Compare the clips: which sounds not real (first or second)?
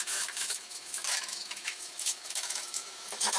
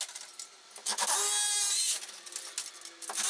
first